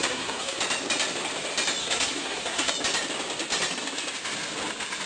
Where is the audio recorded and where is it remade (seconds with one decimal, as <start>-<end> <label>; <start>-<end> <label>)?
0.0-0.6 remade; 0.6-1.8 recorded; 1.8-2.7 remade; 2.7-5.1 recorded